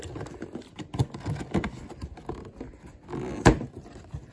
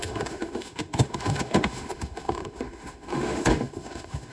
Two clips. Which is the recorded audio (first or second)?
first